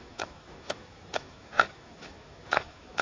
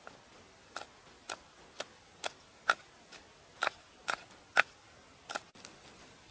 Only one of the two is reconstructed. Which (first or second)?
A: first